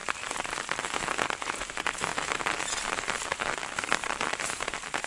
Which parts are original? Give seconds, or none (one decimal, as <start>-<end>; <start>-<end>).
2.1-2.7